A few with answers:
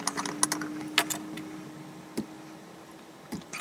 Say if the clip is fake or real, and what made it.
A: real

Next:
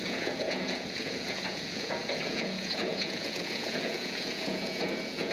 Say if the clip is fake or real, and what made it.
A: fake, vocoder, Vocos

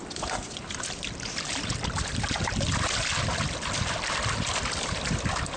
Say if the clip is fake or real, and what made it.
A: real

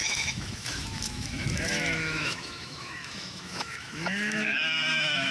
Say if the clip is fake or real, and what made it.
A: fake, autoencoder, DAC-VAE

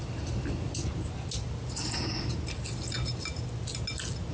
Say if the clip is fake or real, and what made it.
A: real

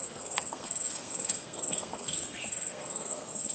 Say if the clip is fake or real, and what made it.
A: fake, codec, SNAC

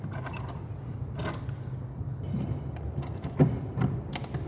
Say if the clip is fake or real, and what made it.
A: real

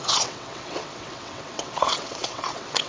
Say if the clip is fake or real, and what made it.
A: fake, vocoder, WaveNeXt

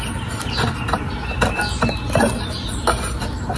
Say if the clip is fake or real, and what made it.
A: real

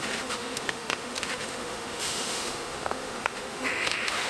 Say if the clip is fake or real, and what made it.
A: fake, autoencoder, DAC-VAE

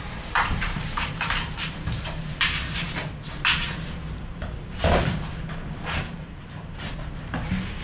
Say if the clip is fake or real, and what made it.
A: fake, vocoder, BigVGAN v2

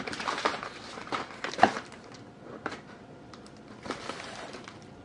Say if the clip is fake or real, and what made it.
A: fake, vocoder, BigVGAN v2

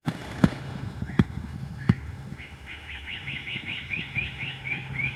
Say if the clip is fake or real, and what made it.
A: fake, autoencoder, DAC-VAE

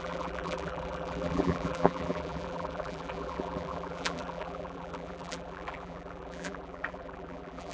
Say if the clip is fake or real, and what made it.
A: fake, vocoder, BigVGAN v2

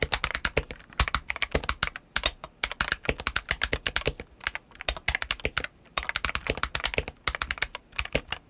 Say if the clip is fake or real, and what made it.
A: real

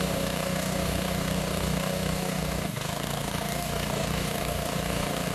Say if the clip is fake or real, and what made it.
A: fake, codec, DAC